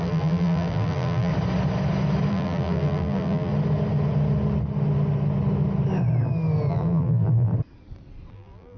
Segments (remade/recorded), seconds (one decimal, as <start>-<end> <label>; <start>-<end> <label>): 0.0-1.3 remade; 1.3-2.3 recorded; 2.3-3.5 remade; 3.5-6.7 recorded; 6.7-7.5 remade; 7.5-8.3 recorded; 8.3-8.8 remade